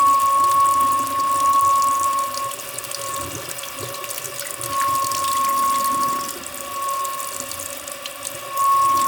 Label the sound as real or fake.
real